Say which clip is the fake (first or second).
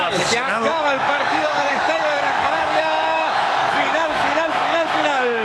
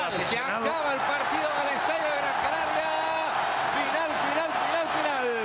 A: first